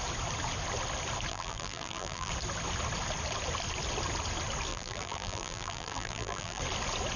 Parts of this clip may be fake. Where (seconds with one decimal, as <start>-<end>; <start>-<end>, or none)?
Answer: 1.3-2.3; 4.7-6.6